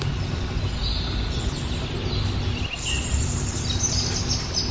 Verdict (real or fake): real